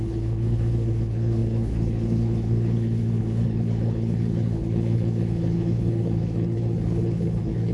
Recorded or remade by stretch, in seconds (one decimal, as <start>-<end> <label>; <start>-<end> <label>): 0.0-7.7 remade